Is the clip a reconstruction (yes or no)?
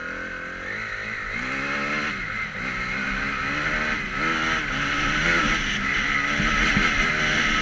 no